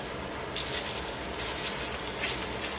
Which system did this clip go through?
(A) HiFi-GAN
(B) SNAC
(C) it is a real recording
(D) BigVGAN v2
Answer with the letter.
C